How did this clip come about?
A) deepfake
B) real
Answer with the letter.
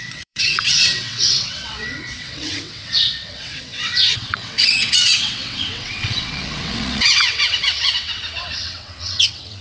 A